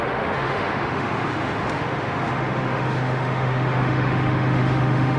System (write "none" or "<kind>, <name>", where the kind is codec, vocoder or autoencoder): autoencoder, DAC-VAE